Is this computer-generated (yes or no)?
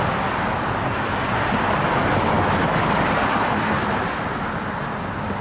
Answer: no